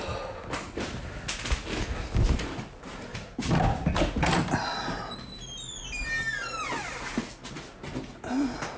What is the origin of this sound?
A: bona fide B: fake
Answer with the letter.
A